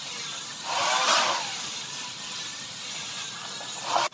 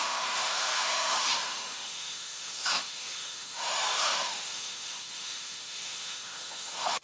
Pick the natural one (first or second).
first